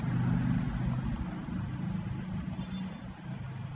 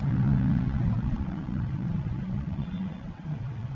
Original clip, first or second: first